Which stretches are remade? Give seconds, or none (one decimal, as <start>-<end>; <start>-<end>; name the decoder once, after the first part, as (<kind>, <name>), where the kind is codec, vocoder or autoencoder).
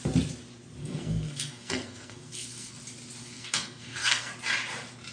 0.8-2.8 (codec, SNAC); 3.2-4.3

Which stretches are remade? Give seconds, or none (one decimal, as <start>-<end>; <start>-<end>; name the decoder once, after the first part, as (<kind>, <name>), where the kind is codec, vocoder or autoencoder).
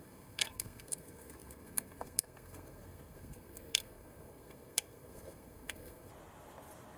0.0-6.1 (codec, SNAC)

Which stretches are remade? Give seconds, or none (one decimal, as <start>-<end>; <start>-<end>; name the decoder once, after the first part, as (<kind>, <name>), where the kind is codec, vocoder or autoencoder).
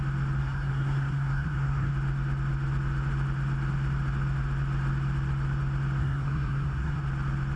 0.4-1.9 (codec, SNAC); 6.0-7.0